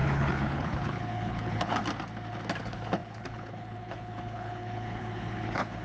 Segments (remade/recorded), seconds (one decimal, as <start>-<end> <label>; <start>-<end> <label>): 0.0-1.8 remade; 1.8-2.6 recorded; 2.6-5.8 remade